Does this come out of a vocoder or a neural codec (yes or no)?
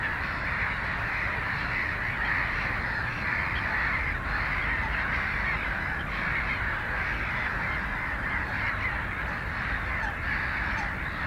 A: no